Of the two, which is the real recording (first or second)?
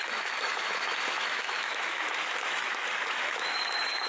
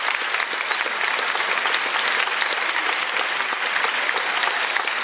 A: second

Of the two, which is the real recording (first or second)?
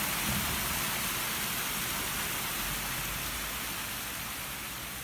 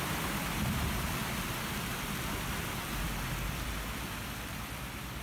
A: first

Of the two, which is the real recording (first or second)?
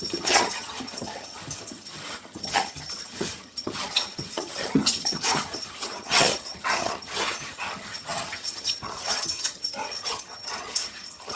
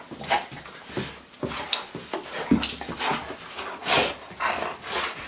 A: second